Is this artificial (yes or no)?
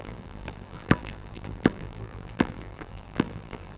yes